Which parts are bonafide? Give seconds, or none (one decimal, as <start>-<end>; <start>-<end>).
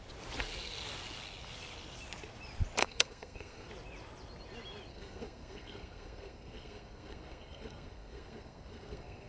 0.0-2.8; 3.7-4.9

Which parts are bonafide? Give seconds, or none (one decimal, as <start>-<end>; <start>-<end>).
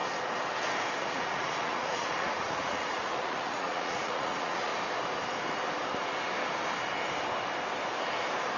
0.0-1.0; 4.7-8.6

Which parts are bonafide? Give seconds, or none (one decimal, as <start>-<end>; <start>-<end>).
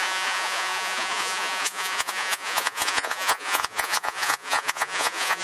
none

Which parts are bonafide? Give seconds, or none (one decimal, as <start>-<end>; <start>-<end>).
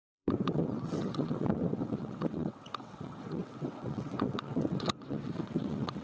none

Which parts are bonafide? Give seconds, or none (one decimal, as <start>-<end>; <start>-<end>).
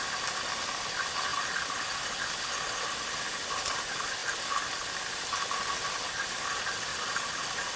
1.3-3.5; 4.2-6.3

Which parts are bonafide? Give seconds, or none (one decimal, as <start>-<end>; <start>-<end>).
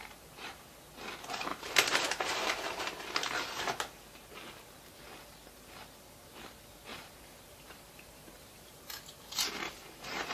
0.6-1.5; 2.8-6.9